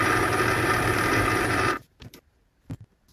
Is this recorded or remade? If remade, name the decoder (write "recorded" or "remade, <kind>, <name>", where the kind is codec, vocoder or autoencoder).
recorded